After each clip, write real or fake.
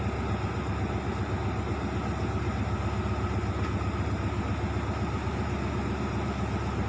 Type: real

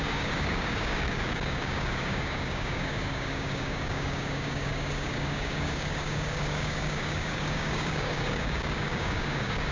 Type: fake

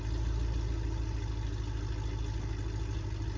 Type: real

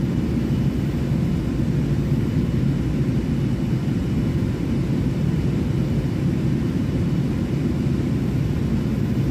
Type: real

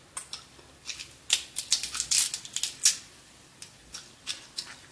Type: real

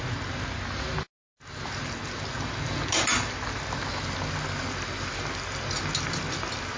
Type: real